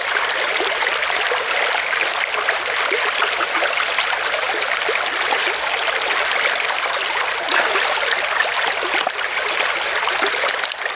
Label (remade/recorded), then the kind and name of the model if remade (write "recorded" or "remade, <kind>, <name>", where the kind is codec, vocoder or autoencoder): recorded